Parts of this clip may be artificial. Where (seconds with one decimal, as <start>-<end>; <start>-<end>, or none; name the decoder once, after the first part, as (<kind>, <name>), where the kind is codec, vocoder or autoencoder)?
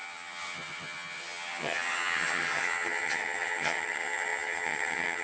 0.0-5.2 (vocoder, HiFi-GAN)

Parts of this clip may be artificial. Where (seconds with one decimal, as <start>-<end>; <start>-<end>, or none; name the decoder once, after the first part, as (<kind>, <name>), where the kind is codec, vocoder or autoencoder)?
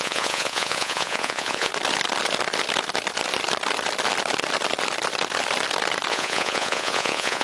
0.0-1.7 (vocoder, Vocos); 6.1-7.4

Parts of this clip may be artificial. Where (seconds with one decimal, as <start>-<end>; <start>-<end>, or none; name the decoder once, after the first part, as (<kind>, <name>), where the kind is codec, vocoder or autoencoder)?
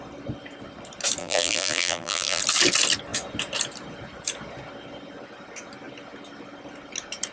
1.2-2.4 (vocoder, BigVGAN v2)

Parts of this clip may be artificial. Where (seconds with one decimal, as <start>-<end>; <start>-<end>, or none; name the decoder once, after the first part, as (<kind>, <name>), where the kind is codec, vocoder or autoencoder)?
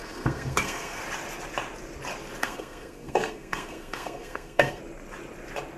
0.0-1.0 (codec, SNAC); 2.4-4.8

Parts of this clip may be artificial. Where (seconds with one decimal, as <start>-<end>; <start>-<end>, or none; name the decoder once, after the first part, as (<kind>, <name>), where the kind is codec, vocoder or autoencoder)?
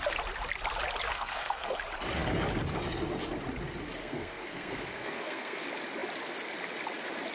1.1-1.8 (codec, SNAC); 4.0-5.6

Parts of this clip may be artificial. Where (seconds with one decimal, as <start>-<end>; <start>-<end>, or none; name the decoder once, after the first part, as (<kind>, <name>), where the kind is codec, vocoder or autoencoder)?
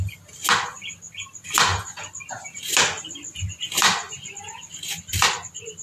none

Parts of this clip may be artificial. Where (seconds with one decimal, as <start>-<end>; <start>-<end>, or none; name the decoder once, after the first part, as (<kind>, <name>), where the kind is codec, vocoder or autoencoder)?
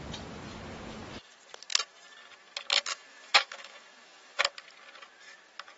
2.9-4.4 (autoencoder, DAC-VAE)